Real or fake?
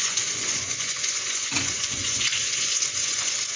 fake